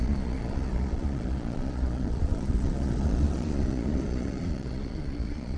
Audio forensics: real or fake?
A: fake